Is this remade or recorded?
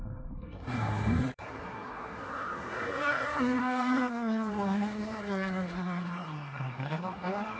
remade